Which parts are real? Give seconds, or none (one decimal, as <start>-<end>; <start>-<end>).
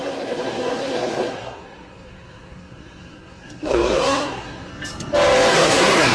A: 4.7-5.5